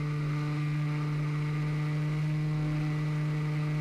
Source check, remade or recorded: recorded